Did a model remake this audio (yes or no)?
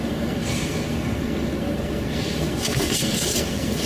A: yes